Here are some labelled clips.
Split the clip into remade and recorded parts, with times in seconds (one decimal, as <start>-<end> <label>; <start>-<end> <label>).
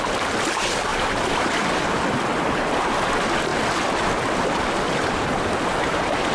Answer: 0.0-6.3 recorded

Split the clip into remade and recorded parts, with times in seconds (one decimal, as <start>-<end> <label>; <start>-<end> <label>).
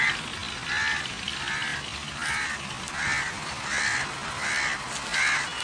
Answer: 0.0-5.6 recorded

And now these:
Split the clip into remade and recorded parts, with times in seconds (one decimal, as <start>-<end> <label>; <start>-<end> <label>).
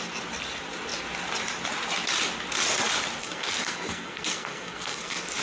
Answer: 0.0-3.2 recorded; 3.2-5.4 remade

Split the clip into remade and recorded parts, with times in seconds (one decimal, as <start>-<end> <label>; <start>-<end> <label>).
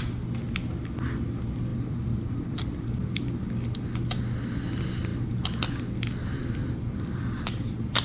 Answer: 0.0-1.7 recorded; 1.7-3.4 remade; 3.4-6.4 recorded; 6.4-7.2 remade; 7.2-8.0 recorded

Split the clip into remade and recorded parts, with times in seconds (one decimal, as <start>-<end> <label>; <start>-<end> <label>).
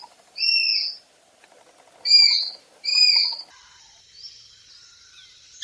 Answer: 0.0-0.7 remade; 0.7-2.0 recorded; 2.0-5.6 remade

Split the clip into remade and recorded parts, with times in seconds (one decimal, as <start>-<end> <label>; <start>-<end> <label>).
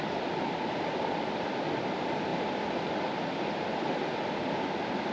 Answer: 0.0-5.1 recorded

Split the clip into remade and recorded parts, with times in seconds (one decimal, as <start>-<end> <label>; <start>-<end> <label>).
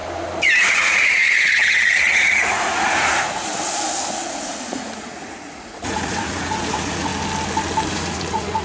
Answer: 0.0-0.7 recorded; 0.7-3.5 remade; 3.5-4.3 recorded; 4.3-7.1 remade; 7.1-7.9 recorded; 7.9-8.6 remade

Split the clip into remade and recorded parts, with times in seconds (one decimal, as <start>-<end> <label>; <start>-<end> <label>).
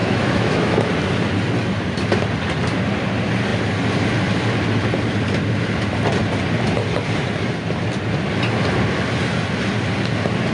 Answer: 0.0-0.9 remade; 0.9-10.5 recorded